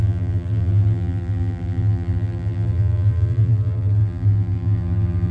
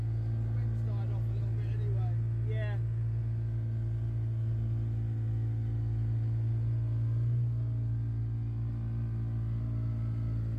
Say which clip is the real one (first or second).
second